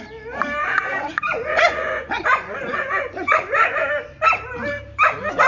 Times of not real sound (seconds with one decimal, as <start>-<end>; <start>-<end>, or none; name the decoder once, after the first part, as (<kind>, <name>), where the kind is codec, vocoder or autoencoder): 0.6-3.9 (vocoder, Vocos)

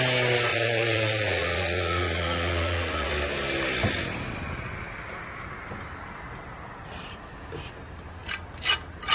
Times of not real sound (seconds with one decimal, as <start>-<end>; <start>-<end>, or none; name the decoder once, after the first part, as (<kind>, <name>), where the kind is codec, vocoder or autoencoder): 0.5-3.1 (vocoder, Vocos)

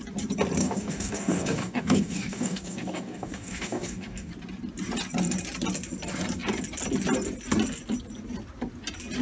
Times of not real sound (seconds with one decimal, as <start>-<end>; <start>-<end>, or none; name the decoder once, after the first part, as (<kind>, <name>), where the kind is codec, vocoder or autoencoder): 0.6-4.3 (codec, DAC)

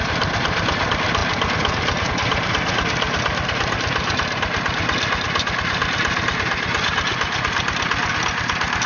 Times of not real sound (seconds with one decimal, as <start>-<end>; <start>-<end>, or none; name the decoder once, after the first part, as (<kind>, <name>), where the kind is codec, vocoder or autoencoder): none